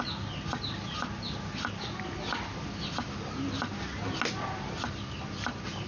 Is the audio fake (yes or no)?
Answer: no